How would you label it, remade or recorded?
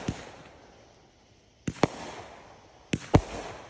recorded